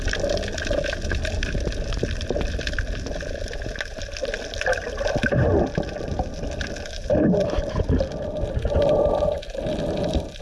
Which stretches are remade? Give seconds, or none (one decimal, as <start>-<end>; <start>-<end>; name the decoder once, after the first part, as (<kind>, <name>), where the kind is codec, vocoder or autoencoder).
none